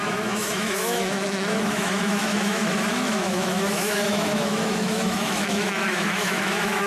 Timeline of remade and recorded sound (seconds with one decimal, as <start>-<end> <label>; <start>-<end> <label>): 0.0-6.9 remade